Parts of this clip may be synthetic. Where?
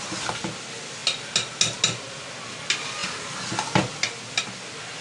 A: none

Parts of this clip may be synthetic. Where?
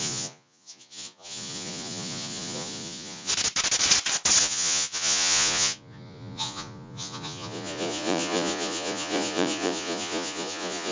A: 0.0-3.3 (vocoder, Vocos); 4.4-10.9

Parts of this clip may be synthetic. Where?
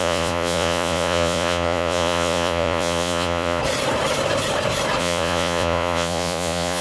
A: 0.0-3.6 (vocoder, Vocos); 5.0-6.8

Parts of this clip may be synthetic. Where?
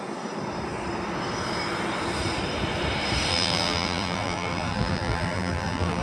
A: 3.3-6.0 (vocoder, BigVGAN v2)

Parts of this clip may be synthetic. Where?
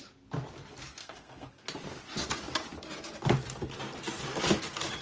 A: 1.0-1.5 (codec, SNAC)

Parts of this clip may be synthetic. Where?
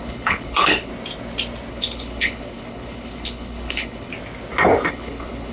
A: 0.0-0.9 (codec, HILCodec); 1.7-4.1; 4.9-5.5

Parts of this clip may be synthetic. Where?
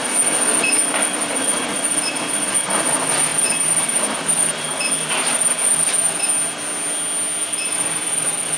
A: 0.0-6.3 (vocoder, BigVGAN v2); 7.4-8.6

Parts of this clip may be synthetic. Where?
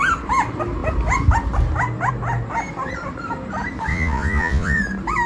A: 3.9-4.8 (vocoder, Vocos)